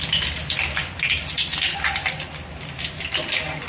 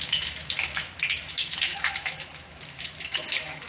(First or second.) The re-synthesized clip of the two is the second